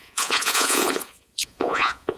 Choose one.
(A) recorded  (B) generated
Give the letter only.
B